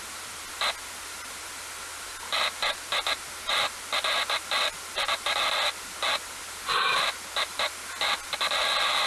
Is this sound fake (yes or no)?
no